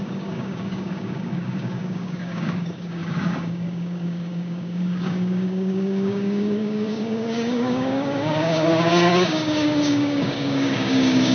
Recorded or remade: remade